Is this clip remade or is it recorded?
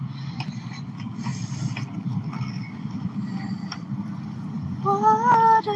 recorded